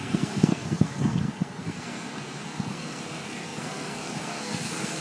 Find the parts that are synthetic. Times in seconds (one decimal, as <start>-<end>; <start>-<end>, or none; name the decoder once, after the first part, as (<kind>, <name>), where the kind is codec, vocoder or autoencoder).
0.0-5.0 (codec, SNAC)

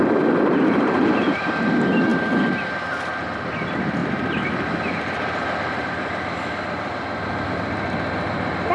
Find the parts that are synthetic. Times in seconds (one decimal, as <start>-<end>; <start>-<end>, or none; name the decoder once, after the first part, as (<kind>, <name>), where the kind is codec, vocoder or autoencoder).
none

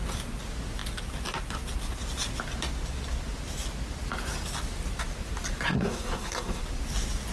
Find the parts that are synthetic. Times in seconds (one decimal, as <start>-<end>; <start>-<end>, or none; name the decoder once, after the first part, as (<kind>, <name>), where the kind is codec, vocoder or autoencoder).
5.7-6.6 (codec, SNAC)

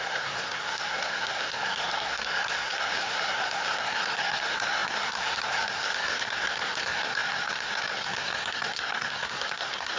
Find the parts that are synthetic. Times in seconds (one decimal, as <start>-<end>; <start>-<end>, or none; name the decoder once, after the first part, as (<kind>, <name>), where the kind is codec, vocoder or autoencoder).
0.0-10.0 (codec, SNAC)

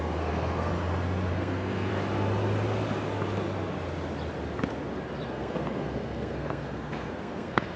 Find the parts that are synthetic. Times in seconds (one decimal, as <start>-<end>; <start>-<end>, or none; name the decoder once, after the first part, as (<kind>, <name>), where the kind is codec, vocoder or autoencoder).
0.0-0.7 (codec, SNAC); 1.3-1.9; 5.3-7.8